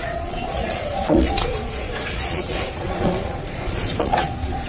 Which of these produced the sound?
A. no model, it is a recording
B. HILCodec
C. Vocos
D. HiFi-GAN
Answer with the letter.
C